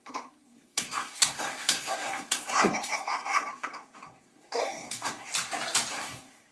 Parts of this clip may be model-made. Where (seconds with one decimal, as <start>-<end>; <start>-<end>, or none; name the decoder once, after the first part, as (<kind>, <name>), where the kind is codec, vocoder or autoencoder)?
0.0-5.3 (codec, SNAC); 5.9-6.5